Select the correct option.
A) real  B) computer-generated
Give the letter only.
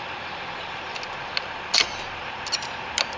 A